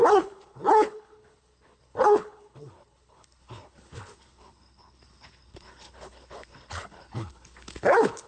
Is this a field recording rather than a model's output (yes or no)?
no